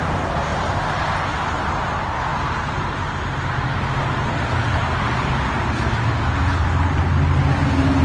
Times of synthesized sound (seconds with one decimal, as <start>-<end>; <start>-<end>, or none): none